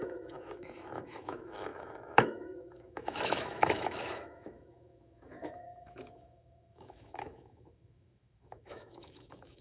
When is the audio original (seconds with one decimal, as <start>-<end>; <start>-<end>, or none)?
none